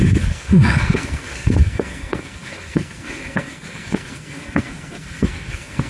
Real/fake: fake